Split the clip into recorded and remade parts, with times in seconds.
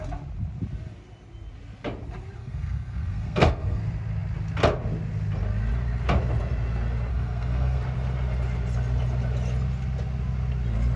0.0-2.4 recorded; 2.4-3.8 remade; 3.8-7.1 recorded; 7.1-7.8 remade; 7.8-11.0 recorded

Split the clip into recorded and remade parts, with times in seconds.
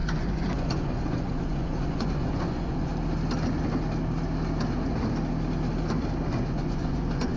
0.0-2.9 remade; 2.9-6.4 recorded; 6.4-7.4 remade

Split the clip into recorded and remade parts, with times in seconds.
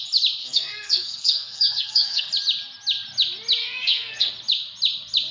0.0-0.4 recorded; 0.4-2.3 remade; 2.3-3.6 recorded; 3.6-4.3 remade; 4.3-5.3 recorded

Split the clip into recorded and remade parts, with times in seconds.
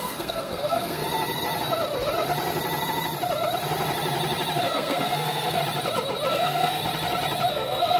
0.0-1.0 remade; 1.0-4.6 recorded; 4.6-5.6 remade; 5.6-6.3 recorded; 6.3-6.8 remade; 6.8-7.5 recorded; 7.5-8.0 remade